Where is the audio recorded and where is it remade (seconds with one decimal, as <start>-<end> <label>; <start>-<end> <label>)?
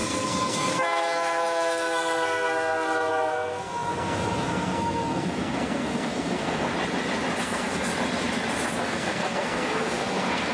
0.0-6.7 remade; 6.7-7.4 recorded; 7.4-7.9 remade; 7.9-8.8 recorded; 8.8-10.5 remade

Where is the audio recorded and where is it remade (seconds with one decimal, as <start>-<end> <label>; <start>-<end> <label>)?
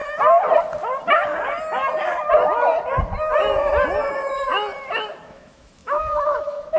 0.0-4.1 recorded; 4.1-4.5 remade; 4.5-5.2 recorded; 5.2-6.8 remade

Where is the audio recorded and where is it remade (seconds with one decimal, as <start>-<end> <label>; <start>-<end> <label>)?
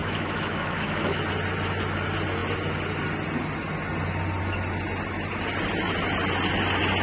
0.0-1.2 remade; 1.2-7.0 recorded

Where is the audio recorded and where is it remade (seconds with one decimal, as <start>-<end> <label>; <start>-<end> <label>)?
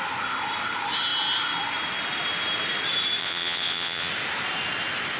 0.0-3.2 recorded; 3.2-4.1 remade; 4.1-5.2 recorded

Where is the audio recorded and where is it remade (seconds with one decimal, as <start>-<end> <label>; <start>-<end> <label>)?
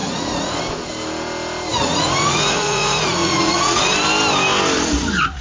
0.0-0.6 remade; 0.6-1.7 recorded; 1.7-3.8 remade; 3.8-5.4 recorded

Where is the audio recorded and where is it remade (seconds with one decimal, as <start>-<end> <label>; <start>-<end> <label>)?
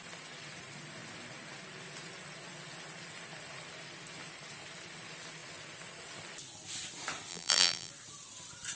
0.0-7.3 recorded; 7.3-7.9 remade; 7.9-8.8 recorded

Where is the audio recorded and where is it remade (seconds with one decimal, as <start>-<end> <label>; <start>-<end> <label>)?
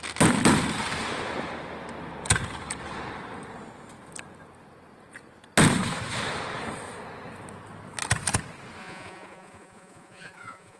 0.0-8.8 recorded; 8.8-10.8 remade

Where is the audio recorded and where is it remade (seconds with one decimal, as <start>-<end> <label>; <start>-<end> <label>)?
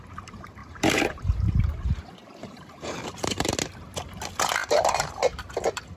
0.0-0.6 recorded; 0.6-3.5 remade; 3.5-4.6 recorded; 4.6-5.1 remade; 5.1-6.0 recorded